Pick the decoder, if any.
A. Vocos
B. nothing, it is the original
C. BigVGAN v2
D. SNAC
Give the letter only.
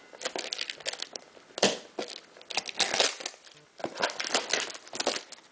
B